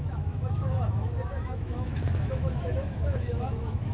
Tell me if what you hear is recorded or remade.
remade